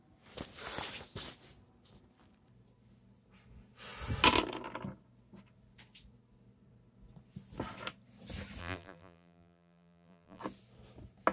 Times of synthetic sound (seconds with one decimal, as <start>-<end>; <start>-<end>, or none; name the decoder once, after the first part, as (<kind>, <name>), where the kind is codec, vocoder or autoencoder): 8.6-10.4 (vocoder, BigVGAN v2)